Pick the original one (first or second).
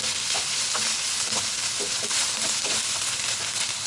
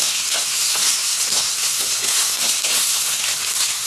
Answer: first